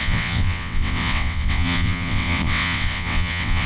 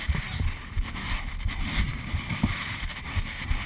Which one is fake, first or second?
first